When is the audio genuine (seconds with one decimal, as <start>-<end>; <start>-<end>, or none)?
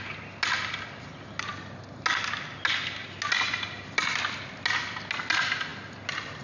0.0-6.4